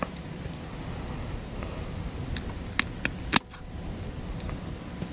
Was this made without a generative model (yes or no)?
yes